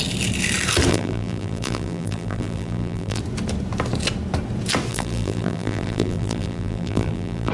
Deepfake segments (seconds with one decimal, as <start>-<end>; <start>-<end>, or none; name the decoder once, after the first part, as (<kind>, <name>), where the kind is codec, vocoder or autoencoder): 0.9-3.2 (vocoder, BigVGAN v2); 4.9-7.5